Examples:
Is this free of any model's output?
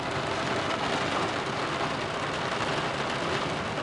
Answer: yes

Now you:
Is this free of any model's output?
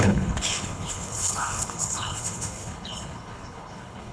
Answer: no